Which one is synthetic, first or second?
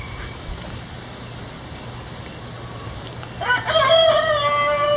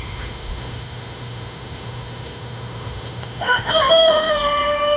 second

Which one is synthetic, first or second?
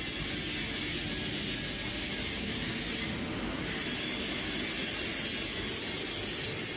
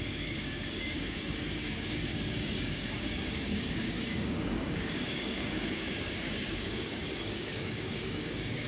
second